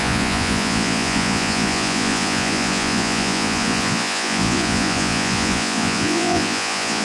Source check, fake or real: fake